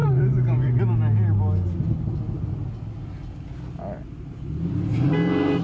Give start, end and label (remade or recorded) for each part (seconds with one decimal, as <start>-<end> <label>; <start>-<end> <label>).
0.0-0.8 remade; 0.8-5.6 recorded